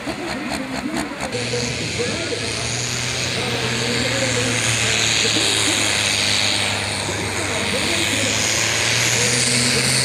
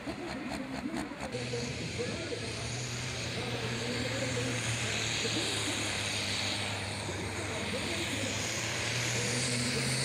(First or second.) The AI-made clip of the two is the second